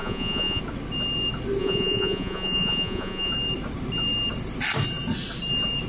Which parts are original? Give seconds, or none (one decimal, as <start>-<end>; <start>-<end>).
0.6-1.6; 3.3-5.9